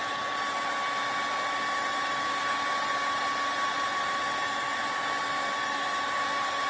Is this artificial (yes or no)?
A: no